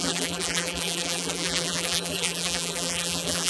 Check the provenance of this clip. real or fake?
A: fake